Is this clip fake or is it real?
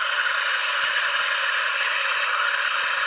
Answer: real